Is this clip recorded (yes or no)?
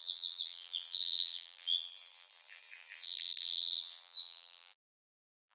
no